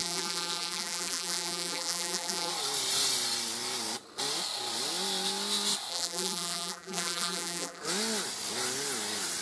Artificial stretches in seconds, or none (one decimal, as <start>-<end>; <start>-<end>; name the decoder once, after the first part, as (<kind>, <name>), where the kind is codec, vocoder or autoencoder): 0.0-2.5 (vocoder, BigVGAN v2); 5.9-7.8